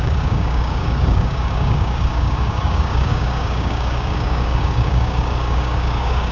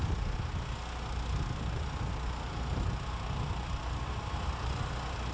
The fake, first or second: first